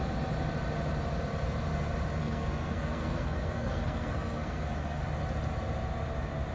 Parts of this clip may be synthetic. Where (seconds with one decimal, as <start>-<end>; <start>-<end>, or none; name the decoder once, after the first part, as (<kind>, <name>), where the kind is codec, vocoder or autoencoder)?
2.2-5.0 (codec, SNAC)